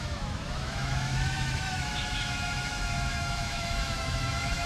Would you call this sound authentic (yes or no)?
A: no